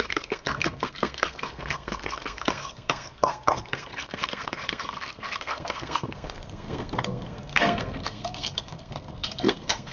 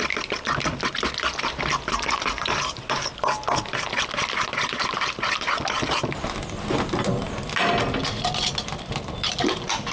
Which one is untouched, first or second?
second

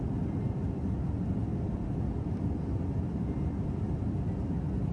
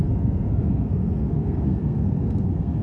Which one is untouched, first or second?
first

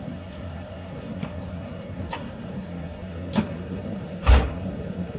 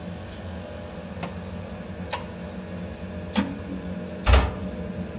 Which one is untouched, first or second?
second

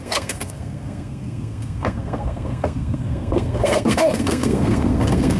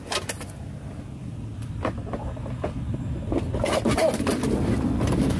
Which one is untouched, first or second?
second